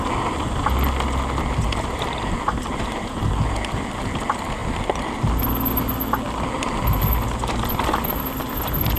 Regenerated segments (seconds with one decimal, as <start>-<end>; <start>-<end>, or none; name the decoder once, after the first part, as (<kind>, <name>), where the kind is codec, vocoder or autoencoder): none